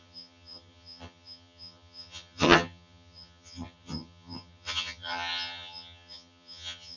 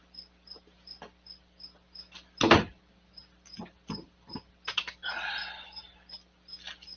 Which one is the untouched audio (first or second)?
second